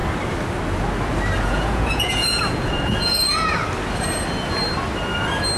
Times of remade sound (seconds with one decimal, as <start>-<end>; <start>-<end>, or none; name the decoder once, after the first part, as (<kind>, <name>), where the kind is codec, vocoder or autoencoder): 1.4-3.5 (vocoder, Vocos)